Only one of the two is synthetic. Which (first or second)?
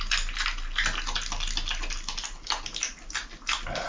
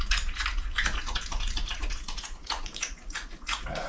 second